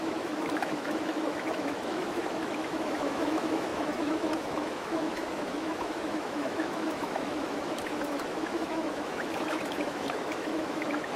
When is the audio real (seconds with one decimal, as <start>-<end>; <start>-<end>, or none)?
none